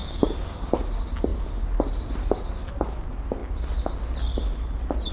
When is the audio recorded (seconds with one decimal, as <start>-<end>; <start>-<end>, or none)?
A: 0.7-5.1